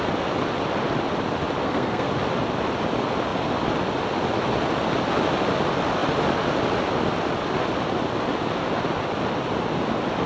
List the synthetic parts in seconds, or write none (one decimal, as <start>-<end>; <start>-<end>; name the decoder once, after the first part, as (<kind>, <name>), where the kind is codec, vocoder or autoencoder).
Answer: 1.6-2.1 (codec, SNAC)